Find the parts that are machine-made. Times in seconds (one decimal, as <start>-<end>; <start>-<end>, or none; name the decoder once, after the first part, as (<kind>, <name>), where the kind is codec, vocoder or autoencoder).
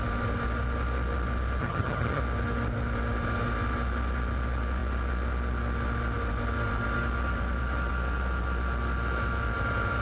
1.6-2.2 (vocoder, HiFi-GAN)